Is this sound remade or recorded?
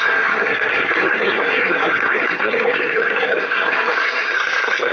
remade